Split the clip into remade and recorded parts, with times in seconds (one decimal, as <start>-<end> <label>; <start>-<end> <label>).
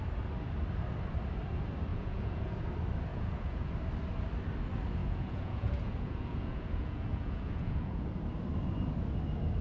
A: 0.0-1.9 recorded; 1.9-2.6 remade; 2.6-3.1 recorded; 3.1-3.7 remade; 3.7-5.0 recorded; 5.0-8.1 remade; 8.1-9.6 recorded